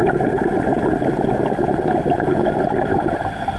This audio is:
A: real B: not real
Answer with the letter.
A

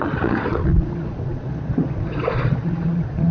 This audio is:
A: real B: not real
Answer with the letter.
B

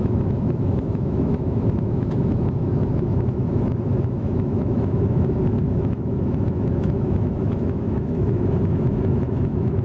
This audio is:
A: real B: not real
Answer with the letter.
B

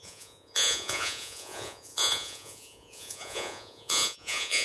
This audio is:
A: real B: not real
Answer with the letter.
B